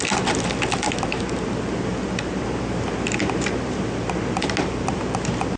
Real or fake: real